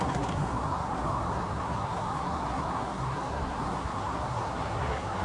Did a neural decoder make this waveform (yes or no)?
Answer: yes